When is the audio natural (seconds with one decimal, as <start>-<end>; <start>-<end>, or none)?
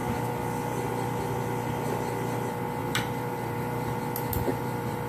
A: 0.0-2.8; 4.0-4.5